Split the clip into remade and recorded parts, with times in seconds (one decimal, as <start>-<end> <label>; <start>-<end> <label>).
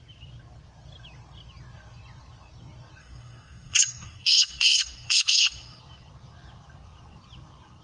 0.0-3.0 recorded; 3.0-5.8 remade; 5.8-7.8 recorded